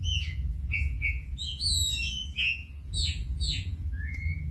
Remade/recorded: remade